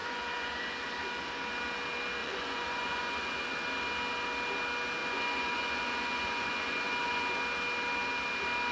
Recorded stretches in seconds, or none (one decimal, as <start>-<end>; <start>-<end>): 0.6-2.2; 3.4-5.0; 7.4-8.7